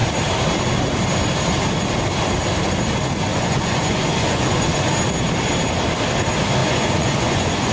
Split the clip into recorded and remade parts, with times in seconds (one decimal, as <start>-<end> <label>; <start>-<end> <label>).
0.0-3.3 recorded; 3.3-4.9 remade; 4.9-6.6 recorded; 6.6-7.7 remade